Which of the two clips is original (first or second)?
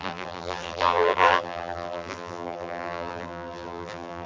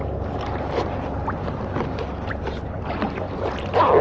second